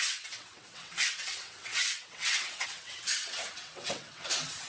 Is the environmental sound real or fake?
fake